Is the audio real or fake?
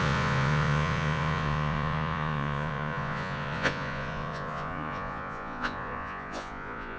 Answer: fake